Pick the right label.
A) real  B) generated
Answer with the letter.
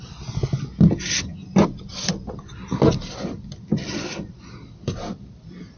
A